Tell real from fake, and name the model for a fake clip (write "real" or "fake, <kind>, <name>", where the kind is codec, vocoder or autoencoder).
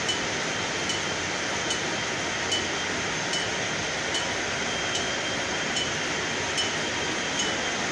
real